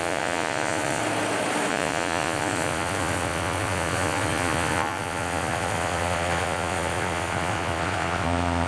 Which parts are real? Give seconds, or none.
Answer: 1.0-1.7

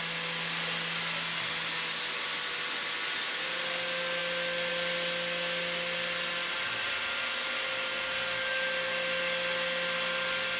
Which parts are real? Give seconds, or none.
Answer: 0.0-10.6